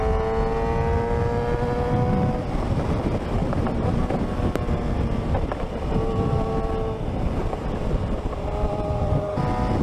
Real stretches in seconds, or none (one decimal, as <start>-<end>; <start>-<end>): 0.0-3.4; 6.5-7.4; 9.4-9.8